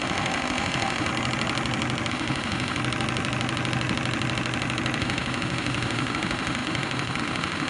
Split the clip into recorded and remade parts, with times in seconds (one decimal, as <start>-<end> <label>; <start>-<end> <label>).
0.0-1.1 remade; 1.1-2.1 recorded; 2.1-2.8 remade; 2.8-5.0 recorded; 5.0-7.7 remade